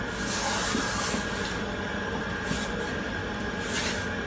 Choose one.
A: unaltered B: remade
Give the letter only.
A